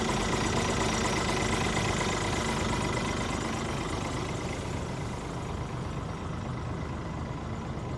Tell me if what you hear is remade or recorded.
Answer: recorded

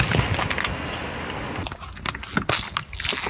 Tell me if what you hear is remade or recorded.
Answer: recorded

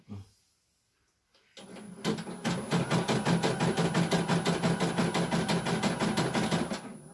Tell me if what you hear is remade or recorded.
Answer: recorded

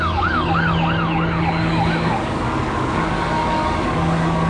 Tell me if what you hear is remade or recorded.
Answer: remade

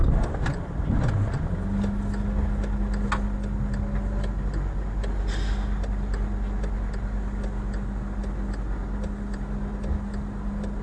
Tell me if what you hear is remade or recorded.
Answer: recorded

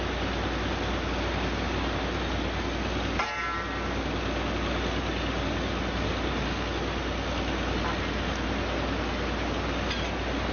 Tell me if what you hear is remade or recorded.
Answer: recorded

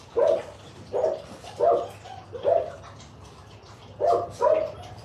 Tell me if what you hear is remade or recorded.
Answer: recorded